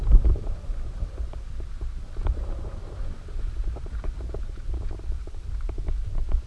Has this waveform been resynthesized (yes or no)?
no